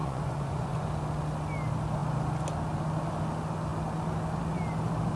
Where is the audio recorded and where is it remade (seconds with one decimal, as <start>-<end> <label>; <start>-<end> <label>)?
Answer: 0.0-0.9 remade; 0.9-5.2 recorded